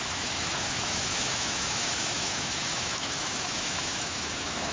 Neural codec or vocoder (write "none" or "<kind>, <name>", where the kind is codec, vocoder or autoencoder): autoencoder, DAC-VAE